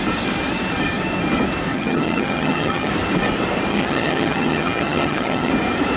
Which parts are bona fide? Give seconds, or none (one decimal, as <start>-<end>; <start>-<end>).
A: 0.0-1.7; 2.9-3.7; 5.5-6.0